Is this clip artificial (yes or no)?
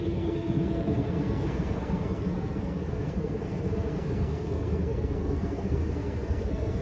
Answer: yes